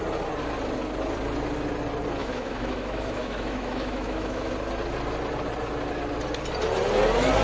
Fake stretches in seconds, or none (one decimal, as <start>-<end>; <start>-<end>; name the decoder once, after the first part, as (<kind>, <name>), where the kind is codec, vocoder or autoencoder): 2.2-4.5 (autoencoder, DAC-VAE)